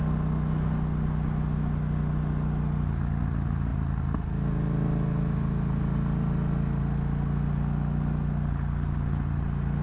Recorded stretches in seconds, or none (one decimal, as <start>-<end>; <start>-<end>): 0.0-9.8